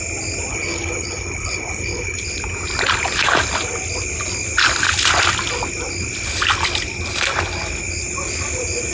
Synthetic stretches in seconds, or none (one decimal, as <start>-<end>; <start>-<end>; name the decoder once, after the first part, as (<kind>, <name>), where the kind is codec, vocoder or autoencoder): 0.5-2.2 (codec, HILCodec)